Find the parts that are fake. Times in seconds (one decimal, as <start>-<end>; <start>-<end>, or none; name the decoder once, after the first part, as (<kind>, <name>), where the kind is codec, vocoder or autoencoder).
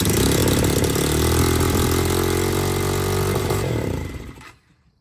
0.0-0.4 (vocoder, BigVGAN v2); 3.4-5.0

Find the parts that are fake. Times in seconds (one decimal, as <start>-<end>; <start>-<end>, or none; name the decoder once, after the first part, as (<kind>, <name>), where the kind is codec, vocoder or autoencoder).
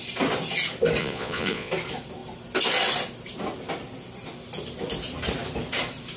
1.0-1.7 (vocoder, Vocos)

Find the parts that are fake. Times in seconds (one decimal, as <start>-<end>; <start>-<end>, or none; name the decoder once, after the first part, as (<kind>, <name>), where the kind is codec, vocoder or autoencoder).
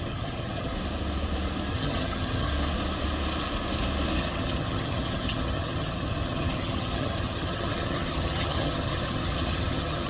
0.0-0.7 (vocoder, HiFi-GAN); 1.7-2.5; 4.2-10.1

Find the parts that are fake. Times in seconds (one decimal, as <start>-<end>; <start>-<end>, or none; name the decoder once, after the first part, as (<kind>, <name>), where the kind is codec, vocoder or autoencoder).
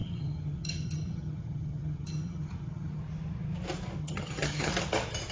0.0-3.0 (vocoder, HiFi-GAN); 4.0-4.7